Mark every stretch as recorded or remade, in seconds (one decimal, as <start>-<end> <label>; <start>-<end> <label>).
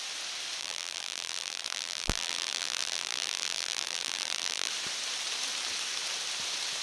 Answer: 0.0-0.6 recorded; 0.6-4.7 remade; 4.7-6.8 recorded